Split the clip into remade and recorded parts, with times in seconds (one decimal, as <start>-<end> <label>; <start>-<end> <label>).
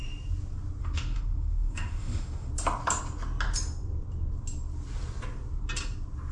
0.0-0.8 recorded; 0.8-2.5 remade; 2.5-6.3 recorded